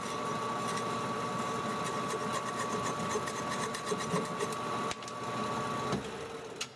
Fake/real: real